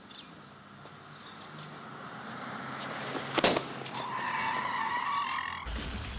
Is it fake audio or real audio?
real